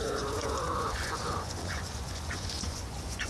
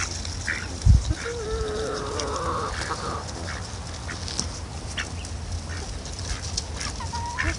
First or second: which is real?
second